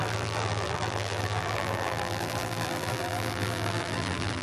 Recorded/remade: remade